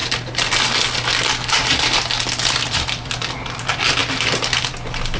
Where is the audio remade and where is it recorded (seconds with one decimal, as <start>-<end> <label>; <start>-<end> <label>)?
0.0-5.2 recorded

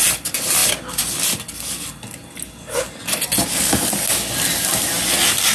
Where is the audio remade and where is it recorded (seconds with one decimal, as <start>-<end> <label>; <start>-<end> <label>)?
0.0-5.5 recorded

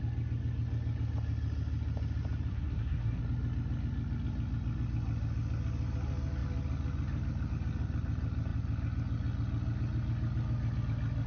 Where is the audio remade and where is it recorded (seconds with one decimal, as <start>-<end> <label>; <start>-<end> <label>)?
0.0-2.5 recorded; 2.5-3.2 remade; 3.2-11.3 recorded

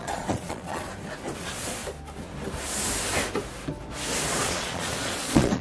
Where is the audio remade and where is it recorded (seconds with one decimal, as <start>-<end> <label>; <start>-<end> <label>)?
0.0-0.9 remade; 0.9-1.4 recorded; 1.4-1.8 remade; 1.8-4.4 recorded; 4.4-5.6 remade